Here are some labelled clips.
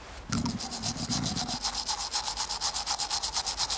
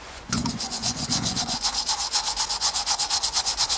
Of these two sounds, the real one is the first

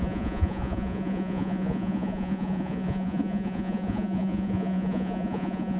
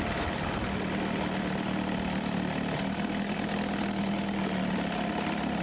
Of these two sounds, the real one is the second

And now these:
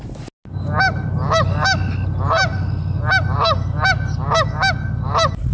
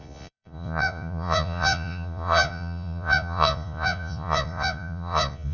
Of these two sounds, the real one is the first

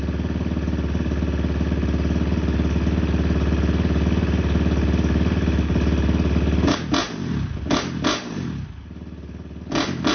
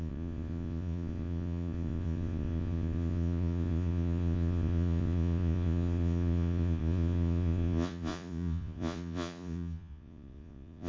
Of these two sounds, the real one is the first